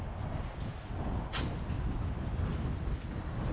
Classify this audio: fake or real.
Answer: real